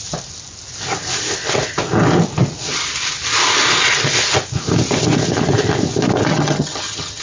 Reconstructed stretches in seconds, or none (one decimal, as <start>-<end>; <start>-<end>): 6.3-7.2